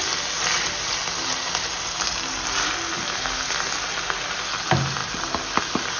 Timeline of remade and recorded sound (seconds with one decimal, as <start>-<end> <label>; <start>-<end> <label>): 0.0-6.0 recorded